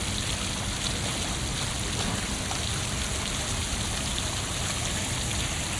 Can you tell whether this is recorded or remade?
recorded